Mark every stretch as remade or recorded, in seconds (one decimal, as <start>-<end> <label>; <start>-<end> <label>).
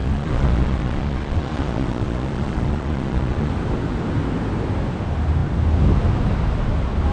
0.0-3.5 remade; 3.5-7.1 recorded